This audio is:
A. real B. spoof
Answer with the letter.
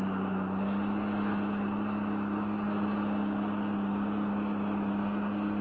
A